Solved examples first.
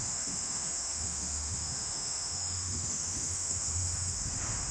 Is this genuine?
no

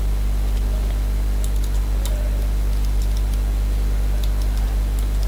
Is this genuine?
yes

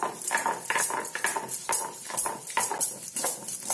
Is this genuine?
yes